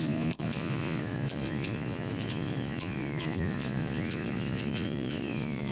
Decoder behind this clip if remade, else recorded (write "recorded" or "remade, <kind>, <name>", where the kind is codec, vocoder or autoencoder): remade, vocoder, Vocos